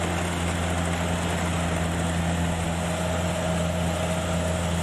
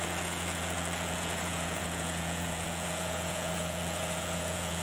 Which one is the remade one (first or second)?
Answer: second